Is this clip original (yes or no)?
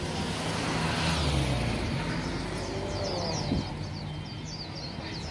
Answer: yes